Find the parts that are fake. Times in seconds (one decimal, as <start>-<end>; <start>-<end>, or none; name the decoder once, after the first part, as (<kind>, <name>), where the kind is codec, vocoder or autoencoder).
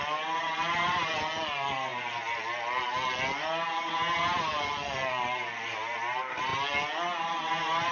none